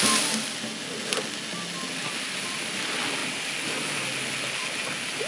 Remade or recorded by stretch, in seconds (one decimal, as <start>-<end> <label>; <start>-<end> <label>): 0.0-5.3 recorded